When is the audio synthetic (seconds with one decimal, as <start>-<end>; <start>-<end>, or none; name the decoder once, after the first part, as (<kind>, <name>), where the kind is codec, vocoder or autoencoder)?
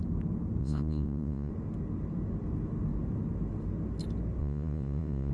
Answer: 0.6-1.5 (vocoder, Vocos); 4.4-5.3